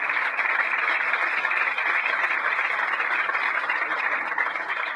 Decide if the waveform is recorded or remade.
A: recorded